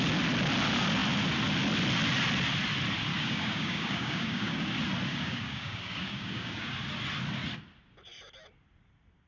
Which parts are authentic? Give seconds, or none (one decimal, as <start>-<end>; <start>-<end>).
0.0-3.1; 4.6-5.1; 6.7-9.3